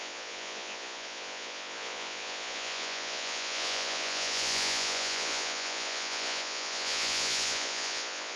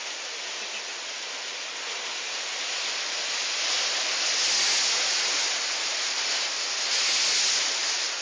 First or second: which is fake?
first